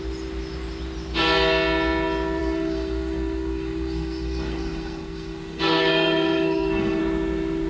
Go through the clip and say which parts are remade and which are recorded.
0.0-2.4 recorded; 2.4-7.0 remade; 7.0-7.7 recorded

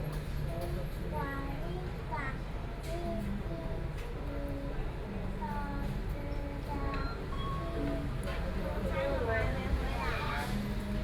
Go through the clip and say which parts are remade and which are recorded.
0.0-4.8 recorded; 4.8-5.4 remade; 5.4-6.0 recorded; 6.0-7.6 remade; 7.6-8.3 recorded; 8.3-10.3 remade; 10.3-11.0 recorded

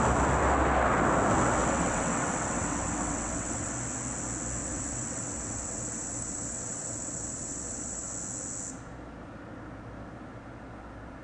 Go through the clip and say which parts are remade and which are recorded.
0.0-1.6 recorded; 1.6-3.7 remade; 3.7-4.6 recorded; 4.6-8.1 remade; 8.1-11.2 recorded

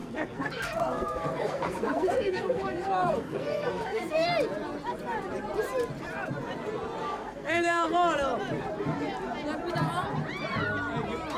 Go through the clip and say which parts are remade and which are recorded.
0.0-4.3 remade; 4.3-7.0 recorded; 7.0-7.9 remade; 7.9-11.4 recorded